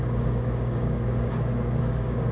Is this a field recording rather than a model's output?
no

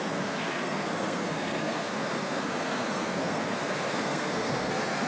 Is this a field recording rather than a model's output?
no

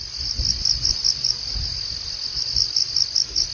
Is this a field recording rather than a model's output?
yes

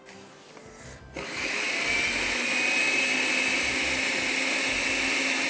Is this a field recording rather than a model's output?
yes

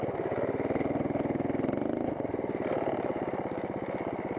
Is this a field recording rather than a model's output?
yes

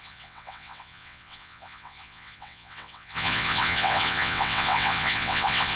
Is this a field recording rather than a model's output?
no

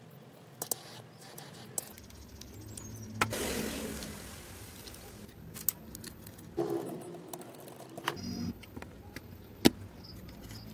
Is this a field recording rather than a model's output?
yes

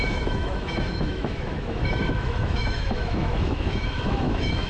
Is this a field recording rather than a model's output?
no